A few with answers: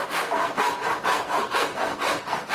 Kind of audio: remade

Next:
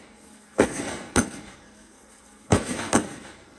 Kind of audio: remade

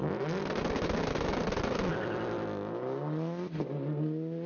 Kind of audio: recorded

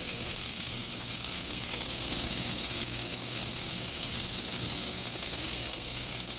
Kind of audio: remade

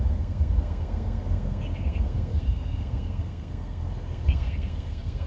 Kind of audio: remade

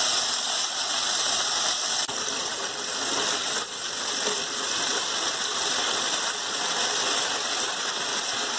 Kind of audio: recorded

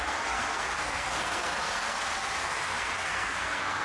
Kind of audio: remade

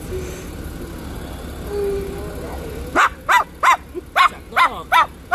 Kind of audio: recorded